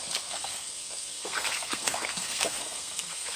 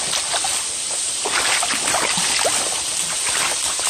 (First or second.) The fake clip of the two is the first